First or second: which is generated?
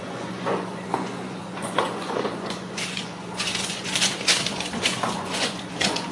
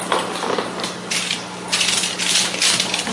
first